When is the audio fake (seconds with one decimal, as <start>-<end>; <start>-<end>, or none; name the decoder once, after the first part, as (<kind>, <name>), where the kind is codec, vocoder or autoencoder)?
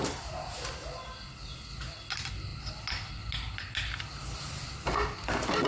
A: none